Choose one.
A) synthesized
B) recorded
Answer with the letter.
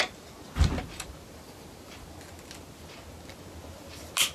B